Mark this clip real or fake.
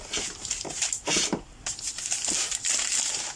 real